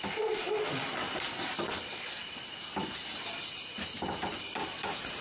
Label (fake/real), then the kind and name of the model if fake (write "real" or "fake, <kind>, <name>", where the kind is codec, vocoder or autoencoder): real